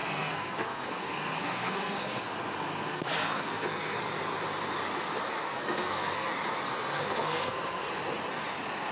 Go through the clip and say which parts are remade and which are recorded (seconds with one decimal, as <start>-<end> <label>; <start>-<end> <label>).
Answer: 0.0-2.2 remade; 2.2-2.9 recorded; 2.9-4.0 remade; 4.0-5.3 recorded; 5.3-6.3 remade; 6.3-6.7 recorded; 6.7-7.9 remade; 7.9-8.9 recorded